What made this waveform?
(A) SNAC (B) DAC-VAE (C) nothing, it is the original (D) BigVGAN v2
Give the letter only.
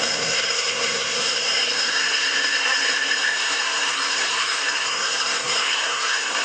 A